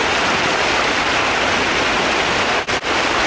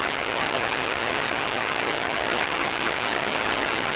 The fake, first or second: second